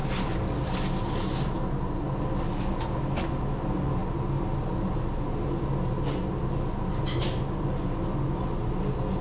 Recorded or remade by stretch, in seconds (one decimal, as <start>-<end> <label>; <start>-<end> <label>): 0.0-9.2 recorded